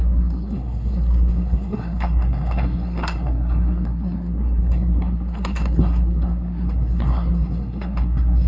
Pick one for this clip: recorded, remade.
remade